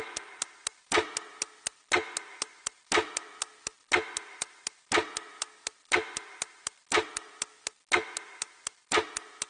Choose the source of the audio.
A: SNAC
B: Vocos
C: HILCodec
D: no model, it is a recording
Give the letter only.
D